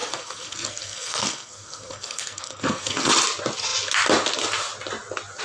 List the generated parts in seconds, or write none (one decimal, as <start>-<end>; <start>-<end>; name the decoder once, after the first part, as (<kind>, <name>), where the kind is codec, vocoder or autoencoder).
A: 0.0-3.1 (codec, SNAC)